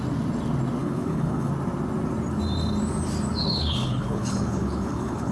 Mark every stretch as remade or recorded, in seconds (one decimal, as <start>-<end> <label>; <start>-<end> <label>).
0.0-0.8 recorded; 0.8-1.5 remade; 1.5-3.4 recorded; 3.4-5.3 remade